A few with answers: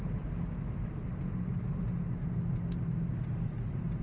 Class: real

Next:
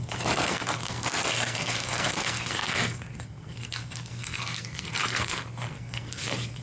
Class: fake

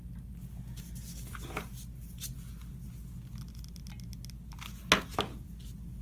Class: real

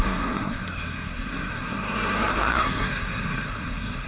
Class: fake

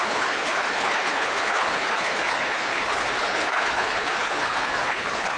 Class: fake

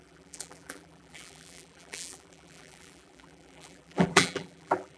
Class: fake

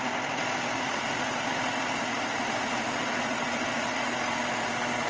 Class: real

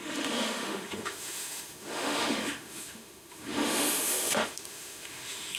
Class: fake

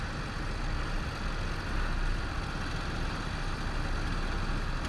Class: real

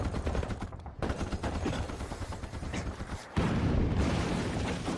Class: fake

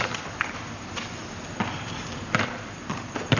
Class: real